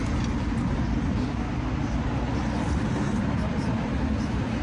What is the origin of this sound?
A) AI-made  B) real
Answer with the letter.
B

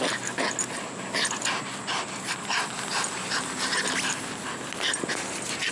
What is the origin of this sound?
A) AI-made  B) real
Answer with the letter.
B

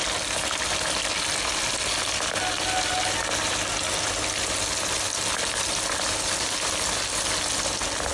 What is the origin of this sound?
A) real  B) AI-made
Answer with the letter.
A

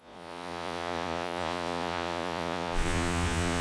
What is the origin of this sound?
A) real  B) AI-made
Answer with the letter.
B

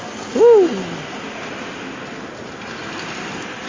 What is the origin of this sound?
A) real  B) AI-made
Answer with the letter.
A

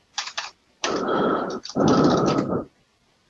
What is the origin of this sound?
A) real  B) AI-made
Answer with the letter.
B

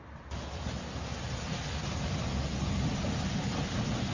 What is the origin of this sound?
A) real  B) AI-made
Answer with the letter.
A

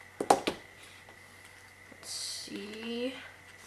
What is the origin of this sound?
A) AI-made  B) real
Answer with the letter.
B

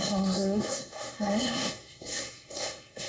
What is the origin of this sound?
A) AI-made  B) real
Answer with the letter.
A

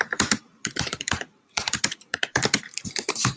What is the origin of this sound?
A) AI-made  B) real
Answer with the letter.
A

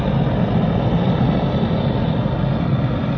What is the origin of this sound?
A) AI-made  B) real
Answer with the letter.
B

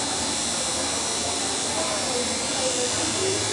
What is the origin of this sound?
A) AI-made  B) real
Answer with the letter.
B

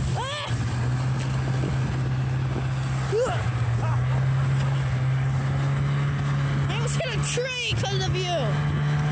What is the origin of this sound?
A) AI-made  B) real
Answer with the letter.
B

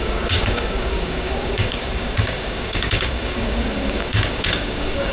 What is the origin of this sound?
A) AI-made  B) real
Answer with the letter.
A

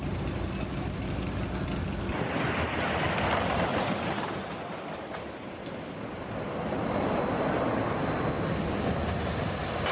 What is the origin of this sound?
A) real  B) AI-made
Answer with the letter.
A